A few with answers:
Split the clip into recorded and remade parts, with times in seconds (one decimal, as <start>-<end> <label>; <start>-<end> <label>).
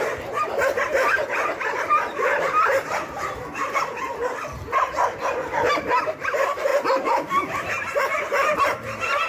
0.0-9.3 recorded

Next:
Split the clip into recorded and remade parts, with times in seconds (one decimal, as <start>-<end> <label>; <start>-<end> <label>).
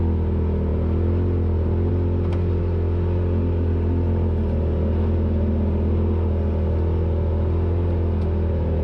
0.0-8.8 recorded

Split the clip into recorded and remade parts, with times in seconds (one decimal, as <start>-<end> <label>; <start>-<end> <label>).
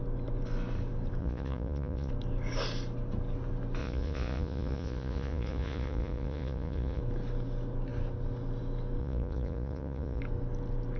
0.0-1.2 recorded; 1.2-2.1 remade; 2.1-3.8 recorded; 3.8-7.0 remade; 7.0-9.0 recorded; 9.0-10.2 remade; 10.2-11.0 recorded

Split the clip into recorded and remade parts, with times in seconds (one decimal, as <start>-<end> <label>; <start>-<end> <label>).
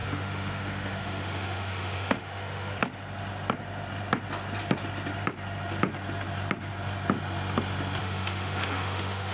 0.0-2.8 remade; 2.8-8.0 recorded; 8.0-9.3 remade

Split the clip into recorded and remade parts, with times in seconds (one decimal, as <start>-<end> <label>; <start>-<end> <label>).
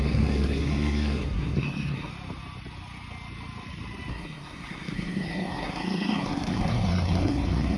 0.0-2.1 remade; 2.1-4.1 recorded; 4.1-7.8 remade